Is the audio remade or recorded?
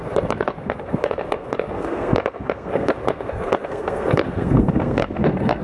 remade